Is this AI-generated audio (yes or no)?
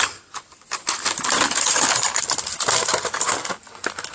no